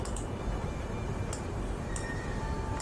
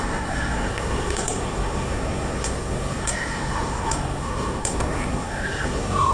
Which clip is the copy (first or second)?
second